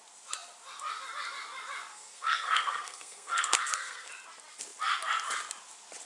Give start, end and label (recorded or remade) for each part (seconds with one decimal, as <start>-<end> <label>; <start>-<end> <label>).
0.0-1.9 recorded; 1.9-4.1 remade; 4.1-6.1 recorded